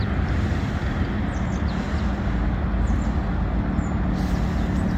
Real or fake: real